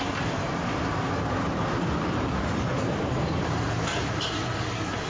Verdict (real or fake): fake